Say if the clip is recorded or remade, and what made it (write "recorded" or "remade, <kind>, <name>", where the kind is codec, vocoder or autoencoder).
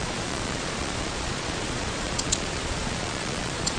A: remade, vocoder, Vocos